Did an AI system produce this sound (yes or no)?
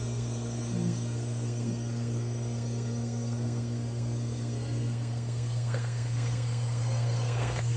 yes